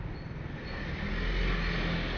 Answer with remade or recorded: recorded